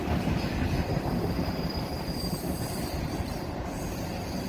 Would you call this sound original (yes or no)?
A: no